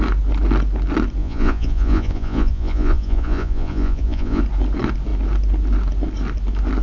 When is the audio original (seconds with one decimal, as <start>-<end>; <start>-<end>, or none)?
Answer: 0.0-1.2; 4.4-6.8